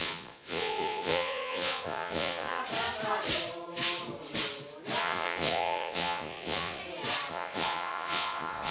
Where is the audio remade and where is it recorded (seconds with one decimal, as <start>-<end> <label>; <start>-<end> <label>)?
0.0-2.6 remade; 2.6-5.0 recorded; 5.0-6.8 remade; 6.8-7.3 recorded; 7.3-8.7 remade